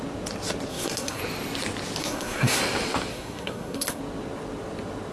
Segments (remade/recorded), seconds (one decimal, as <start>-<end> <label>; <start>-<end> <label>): 0.0-0.7 recorded; 0.7-1.2 remade; 1.2-2.0 recorded; 2.0-2.6 remade; 2.6-3.1 recorded; 3.1-4.0 remade; 4.0-5.1 recorded